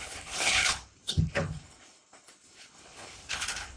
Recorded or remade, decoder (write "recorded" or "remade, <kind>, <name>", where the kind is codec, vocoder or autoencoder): remade, codec, HILCodec